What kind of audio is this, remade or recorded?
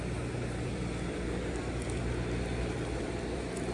remade